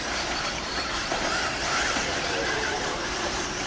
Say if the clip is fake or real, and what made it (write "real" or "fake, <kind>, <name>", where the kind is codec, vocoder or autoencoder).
fake, vocoder, BigVGAN v2